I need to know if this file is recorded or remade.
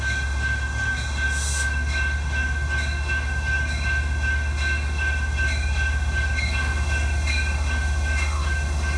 remade